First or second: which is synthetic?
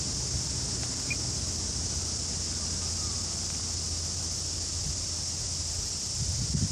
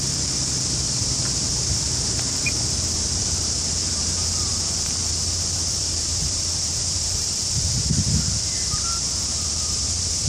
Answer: second